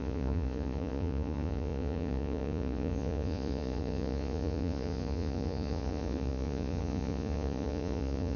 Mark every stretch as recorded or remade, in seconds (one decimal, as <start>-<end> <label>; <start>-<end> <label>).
0.0-8.4 remade